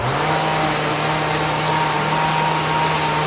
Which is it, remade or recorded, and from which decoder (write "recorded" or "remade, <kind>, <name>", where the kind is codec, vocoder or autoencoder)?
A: recorded